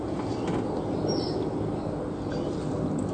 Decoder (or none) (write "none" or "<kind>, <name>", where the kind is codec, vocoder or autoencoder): none